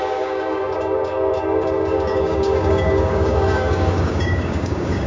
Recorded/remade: remade